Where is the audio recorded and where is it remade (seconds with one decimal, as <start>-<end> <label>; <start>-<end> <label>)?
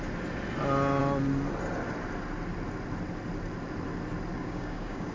0.0-4.3 recorded; 4.3-5.1 remade